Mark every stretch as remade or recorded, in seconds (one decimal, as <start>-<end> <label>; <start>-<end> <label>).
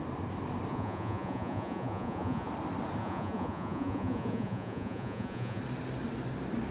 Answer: 0.0-0.7 recorded; 0.7-2.5 remade; 2.5-3.0 recorded; 3.0-5.6 remade; 5.6-6.7 recorded